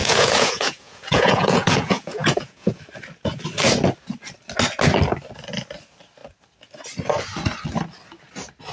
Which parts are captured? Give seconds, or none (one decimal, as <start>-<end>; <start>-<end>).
2.8-8.7